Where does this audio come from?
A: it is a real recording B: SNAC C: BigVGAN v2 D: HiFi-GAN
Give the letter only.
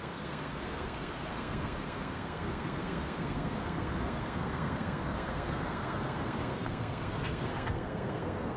B